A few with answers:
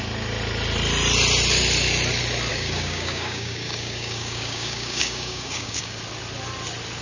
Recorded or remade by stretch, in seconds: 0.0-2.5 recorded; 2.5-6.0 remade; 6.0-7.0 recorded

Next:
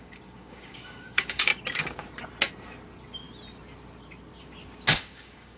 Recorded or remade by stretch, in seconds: 0.0-1.5 remade; 1.5-4.9 recorded; 4.9-5.6 remade

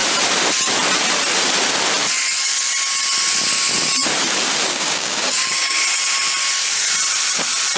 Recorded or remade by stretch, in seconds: 0.0-4.7 recorded; 4.7-5.8 remade; 5.8-7.8 recorded